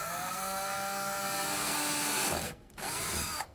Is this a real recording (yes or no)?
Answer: no